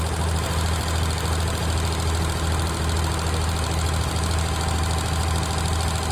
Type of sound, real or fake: real